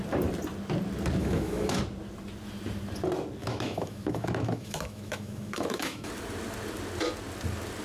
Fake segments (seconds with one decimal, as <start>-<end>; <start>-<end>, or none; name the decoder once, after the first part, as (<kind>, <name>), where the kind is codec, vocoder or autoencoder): 1.2-1.8 (autoencoder, DAC-VAE); 3.4-6.1